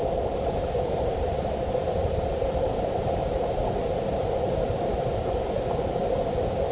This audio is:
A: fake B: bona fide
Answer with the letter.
B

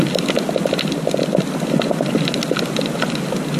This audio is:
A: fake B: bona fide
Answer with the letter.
B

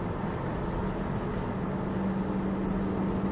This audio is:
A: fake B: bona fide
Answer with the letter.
B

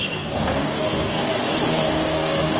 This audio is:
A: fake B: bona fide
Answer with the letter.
A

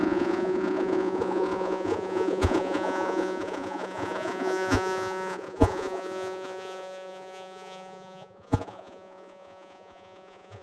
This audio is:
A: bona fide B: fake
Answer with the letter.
B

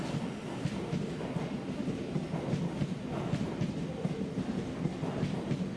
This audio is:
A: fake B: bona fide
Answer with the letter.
B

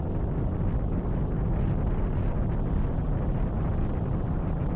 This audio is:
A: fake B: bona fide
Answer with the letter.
B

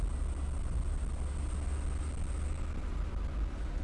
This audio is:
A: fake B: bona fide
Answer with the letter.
B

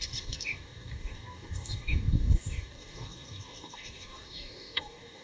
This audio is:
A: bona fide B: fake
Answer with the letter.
B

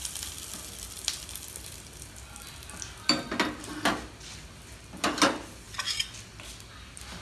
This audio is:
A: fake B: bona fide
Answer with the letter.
B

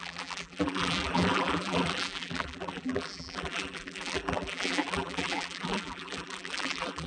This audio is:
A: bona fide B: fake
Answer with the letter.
B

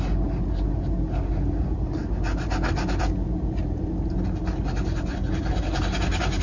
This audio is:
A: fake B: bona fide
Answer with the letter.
B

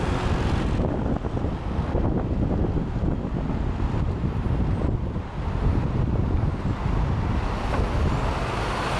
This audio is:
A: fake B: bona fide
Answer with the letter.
B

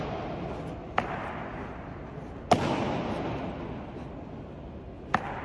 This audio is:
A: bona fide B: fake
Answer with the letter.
A